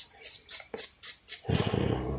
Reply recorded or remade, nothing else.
recorded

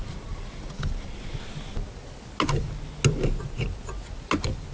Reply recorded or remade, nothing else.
recorded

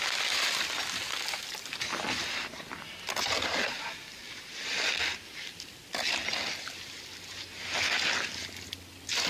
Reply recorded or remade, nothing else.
recorded